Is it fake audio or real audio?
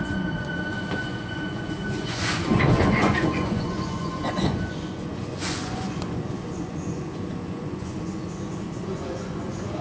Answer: fake